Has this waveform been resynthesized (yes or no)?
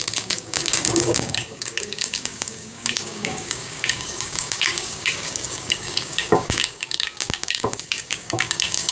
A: yes